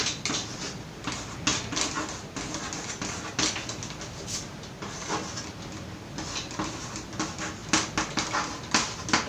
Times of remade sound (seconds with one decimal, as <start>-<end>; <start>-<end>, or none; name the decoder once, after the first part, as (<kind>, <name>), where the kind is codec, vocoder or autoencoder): none

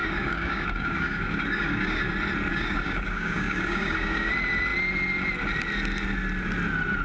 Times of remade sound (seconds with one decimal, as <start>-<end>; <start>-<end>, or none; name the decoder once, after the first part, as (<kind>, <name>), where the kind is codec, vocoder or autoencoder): 0.0-2.1 (codec, DAC); 2.5-4.3

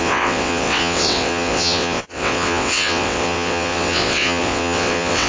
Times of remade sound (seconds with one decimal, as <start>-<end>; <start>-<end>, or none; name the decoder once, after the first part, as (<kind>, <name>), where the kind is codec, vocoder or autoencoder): 0.0-5.3 (vocoder, WaveNeXt)

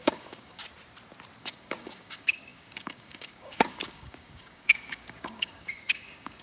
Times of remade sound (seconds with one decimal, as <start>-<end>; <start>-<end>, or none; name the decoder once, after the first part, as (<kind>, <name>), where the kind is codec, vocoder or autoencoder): 0.0-0.6 (codec, DAC); 1.4-6.4

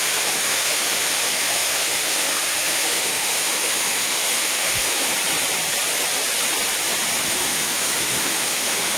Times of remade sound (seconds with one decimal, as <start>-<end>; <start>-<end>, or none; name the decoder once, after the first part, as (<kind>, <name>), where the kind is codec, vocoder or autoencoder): 0.0-5.1 (autoencoder, DAC-VAE); 7.3-9.0

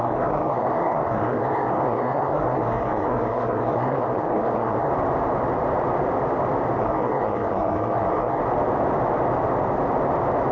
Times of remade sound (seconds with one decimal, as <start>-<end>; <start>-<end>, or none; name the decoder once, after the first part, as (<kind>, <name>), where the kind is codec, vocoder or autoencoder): 0.0-4.9 (codec, SNAC); 6.8-8.4

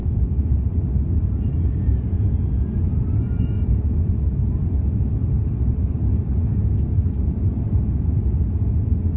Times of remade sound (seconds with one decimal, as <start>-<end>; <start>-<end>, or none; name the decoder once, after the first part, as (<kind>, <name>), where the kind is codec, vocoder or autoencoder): 0.0-0.7 (vocoder, Vocos); 1.9-4.3